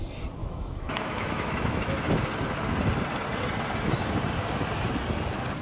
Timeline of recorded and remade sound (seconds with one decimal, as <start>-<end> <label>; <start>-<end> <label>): 0.0-0.4 recorded; 0.4-2.1 remade; 2.1-5.6 recorded